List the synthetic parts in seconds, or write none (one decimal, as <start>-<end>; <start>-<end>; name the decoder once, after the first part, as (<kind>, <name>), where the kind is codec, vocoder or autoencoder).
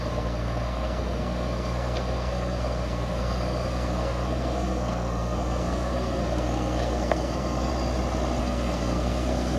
0.0-7.7 (codec, SNAC); 8.4-9.6